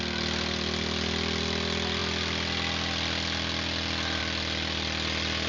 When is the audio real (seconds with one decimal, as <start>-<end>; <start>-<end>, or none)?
0.0-5.5